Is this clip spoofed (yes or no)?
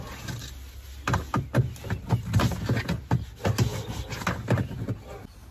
no